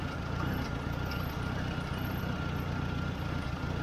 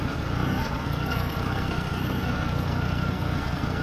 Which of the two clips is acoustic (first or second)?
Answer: first